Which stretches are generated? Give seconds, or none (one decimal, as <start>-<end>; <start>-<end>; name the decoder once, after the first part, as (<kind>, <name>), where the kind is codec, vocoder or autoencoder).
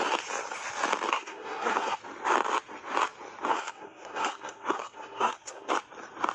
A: 1.1-2.0 (codec, SNAC); 3.5-5.7